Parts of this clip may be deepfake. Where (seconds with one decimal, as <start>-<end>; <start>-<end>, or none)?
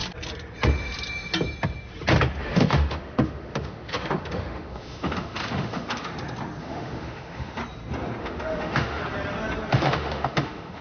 2.4-6.1; 6.6-7.6; 8.2-9.0; 9.7-10.8